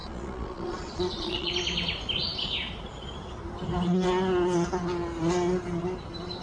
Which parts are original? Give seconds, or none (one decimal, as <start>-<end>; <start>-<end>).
1.5-6.4